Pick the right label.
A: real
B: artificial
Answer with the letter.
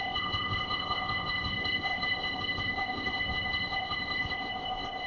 B